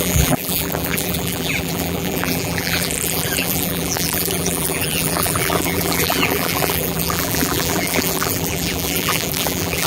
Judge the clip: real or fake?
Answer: fake